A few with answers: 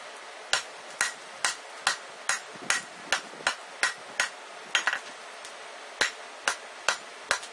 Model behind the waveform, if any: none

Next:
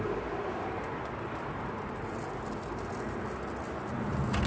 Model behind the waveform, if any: none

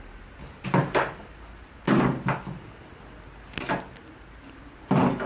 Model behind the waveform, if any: none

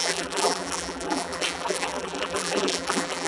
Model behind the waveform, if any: vocoder, BigVGAN v2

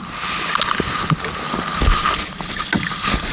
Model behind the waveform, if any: none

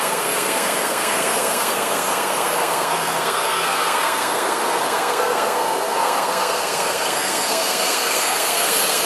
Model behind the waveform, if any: codec, SNAC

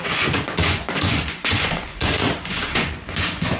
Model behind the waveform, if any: vocoder, Vocos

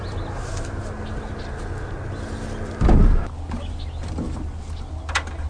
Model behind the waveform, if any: none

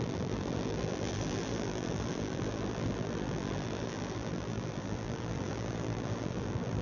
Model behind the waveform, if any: vocoder, BigVGAN v2